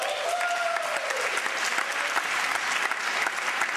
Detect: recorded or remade recorded